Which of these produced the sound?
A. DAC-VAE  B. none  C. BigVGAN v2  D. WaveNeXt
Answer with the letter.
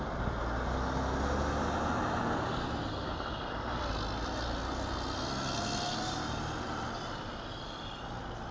B